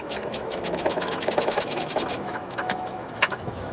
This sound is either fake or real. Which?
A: fake